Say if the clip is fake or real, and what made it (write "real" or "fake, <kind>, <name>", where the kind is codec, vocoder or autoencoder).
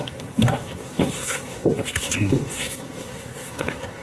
fake, codec, SNAC